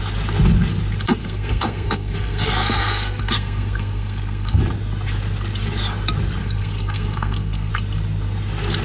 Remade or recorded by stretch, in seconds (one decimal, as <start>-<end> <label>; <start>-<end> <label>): 0.0-1.2 recorded; 1.2-4.6 remade; 4.6-6.4 recorded; 6.4-7.7 remade; 7.7-8.8 recorded